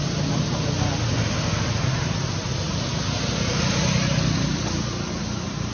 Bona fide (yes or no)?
yes